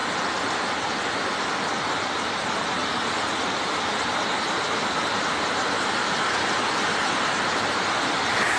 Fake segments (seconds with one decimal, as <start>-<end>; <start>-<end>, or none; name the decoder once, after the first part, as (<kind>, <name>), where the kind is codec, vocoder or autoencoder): none